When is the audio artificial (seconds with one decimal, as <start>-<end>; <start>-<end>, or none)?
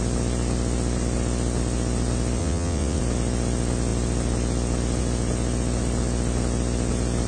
2.4-3.0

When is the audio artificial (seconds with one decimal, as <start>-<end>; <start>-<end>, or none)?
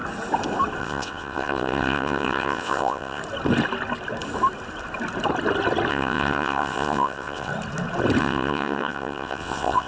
0.8-3.2; 5.9-7.5; 8.2-9.9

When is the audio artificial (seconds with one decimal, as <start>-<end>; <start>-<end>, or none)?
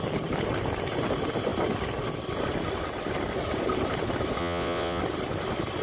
4.4-5.0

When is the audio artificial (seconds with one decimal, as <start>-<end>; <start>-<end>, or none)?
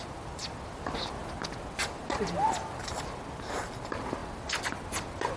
none